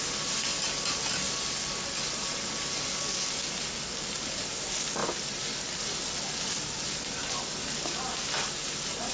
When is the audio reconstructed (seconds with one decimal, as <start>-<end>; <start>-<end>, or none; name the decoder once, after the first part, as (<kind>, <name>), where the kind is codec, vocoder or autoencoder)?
none